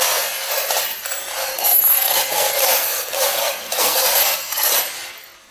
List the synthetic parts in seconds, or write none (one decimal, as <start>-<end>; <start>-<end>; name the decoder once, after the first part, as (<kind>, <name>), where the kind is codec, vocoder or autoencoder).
1.4-4.7 (codec, SNAC)